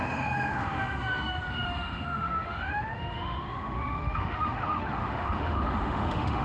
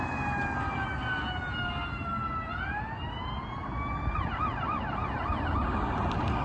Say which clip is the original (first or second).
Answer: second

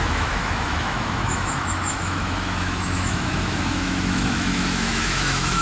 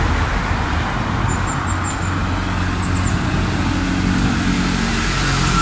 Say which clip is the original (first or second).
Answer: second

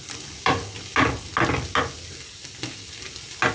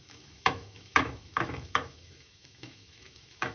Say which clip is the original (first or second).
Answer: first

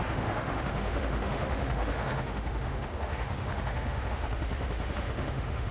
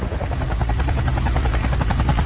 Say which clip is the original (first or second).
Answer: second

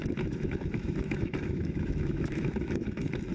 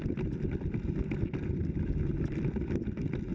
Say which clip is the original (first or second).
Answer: second